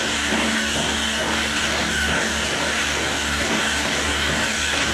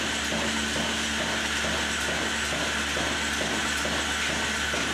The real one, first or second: second